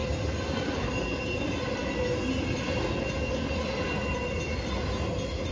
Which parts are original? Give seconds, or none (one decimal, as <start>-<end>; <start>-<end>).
0.0-5.5